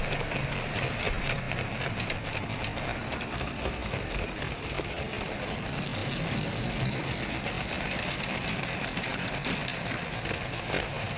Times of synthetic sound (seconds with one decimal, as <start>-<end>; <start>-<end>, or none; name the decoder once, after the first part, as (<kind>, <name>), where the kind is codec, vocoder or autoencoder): 3.8-5.6 (vocoder, BigVGAN v2); 6.0-6.6; 9.1-9.9